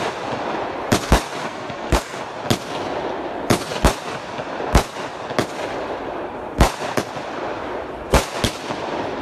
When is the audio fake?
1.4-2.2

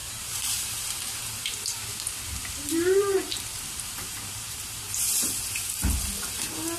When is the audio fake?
0.0-1.2; 2.4-5.7

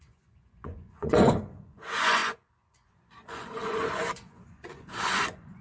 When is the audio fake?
0.0-5.6

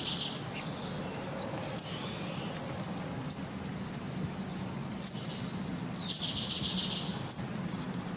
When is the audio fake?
none

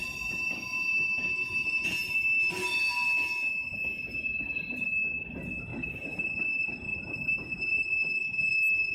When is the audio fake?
0.9-2.5; 5.7-6.4; 6.9-7.9

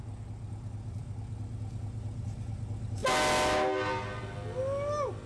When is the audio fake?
none

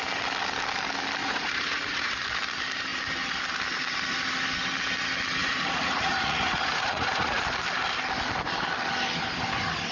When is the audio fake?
1.2-2.1; 5.4-7.4